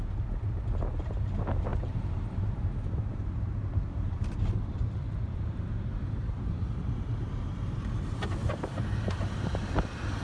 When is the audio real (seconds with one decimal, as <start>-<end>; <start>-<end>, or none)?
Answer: 0.0-1.7; 6.9-8.4; 9.5-10.2